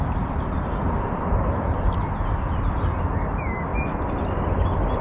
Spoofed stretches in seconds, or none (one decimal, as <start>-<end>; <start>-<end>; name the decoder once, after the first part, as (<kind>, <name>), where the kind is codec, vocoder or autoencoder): none